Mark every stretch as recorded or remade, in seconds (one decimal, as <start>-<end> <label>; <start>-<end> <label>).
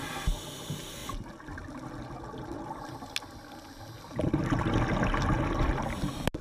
0.0-6.4 recorded